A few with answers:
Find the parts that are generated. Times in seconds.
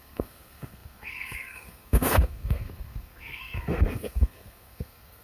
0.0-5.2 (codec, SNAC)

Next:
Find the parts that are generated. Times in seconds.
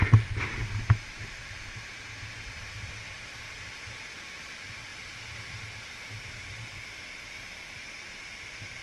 none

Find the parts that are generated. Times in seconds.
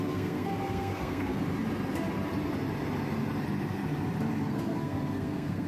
0.0-1.4 (codec, SNAC); 4.5-5.7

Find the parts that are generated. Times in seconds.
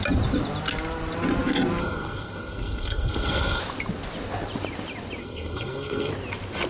1.8-3.6 (codec, SNAC); 5.2-6.1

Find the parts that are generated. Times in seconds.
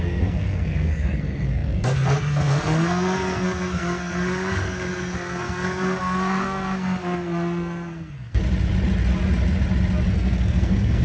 0.0-8.4 (codec, SNAC); 10.1-11.0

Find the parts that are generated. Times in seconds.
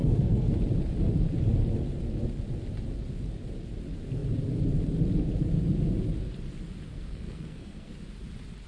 0.0-0.5 (codec, SNAC); 6.9-7.9